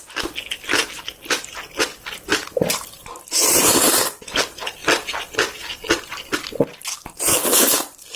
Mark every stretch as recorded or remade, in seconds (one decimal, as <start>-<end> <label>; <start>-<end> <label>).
0.0-2.3 recorded; 2.3-4.2 remade; 4.2-4.8 recorded; 4.8-6.0 remade; 6.0-8.2 recorded